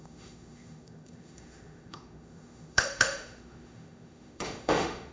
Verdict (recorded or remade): remade